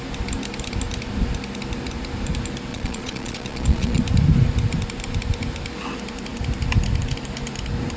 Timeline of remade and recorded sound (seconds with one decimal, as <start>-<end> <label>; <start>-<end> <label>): 0.0-2.7 recorded; 2.7-4.0 remade; 4.0-8.0 recorded